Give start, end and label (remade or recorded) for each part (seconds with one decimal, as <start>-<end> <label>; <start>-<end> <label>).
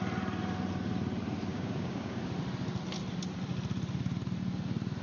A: 0.0-1.5 recorded; 1.5-2.2 remade; 2.2-5.0 recorded